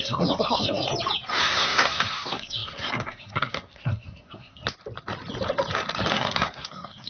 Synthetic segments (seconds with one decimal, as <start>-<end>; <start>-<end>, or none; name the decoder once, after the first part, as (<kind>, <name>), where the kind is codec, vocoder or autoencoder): 0.0-0.9 (codec, SNAC); 1.4-4.6; 6.1-7.1